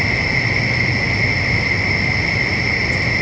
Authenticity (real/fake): real